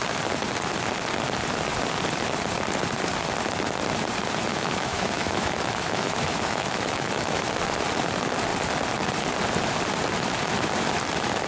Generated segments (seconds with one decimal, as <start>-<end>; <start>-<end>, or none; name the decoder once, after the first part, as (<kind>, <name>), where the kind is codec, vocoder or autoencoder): 4.5-7.5 (autoencoder, DAC-VAE)